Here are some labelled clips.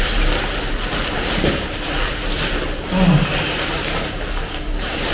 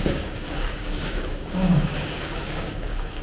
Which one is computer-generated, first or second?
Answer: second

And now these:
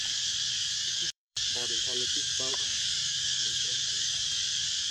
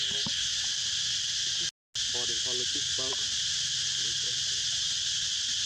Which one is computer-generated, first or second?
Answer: first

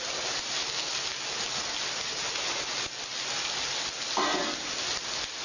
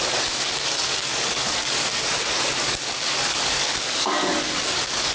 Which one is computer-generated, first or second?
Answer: second